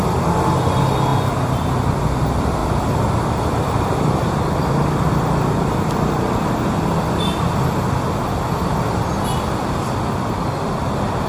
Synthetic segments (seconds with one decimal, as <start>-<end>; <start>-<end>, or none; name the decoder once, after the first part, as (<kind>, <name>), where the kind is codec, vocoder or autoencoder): none

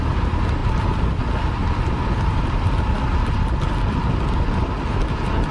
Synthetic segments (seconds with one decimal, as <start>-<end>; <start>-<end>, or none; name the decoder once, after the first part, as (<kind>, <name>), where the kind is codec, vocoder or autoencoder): none

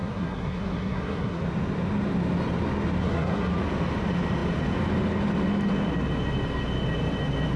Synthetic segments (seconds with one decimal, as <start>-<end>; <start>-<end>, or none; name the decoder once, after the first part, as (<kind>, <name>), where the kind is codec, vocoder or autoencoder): 0.0-1.4 (codec, SNAC); 3.0-3.5

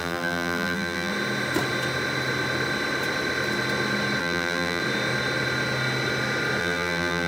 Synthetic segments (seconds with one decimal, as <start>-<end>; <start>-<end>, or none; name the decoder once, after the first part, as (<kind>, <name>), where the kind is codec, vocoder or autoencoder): 0.0-1.1 (vocoder, BigVGAN v2); 4.2-4.8; 6.6-7.3